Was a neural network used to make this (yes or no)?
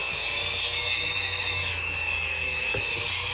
yes